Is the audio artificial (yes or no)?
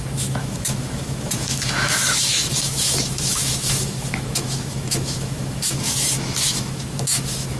yes